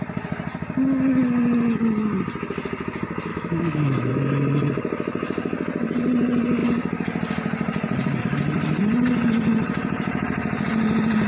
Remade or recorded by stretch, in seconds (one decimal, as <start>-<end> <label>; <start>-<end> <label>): 0.0-3.3 recorded; 3.3-4.1 remade; 4.1-11.3 recorded